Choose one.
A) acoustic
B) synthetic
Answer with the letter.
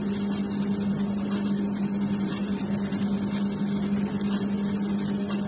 A